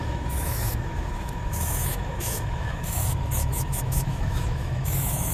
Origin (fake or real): fake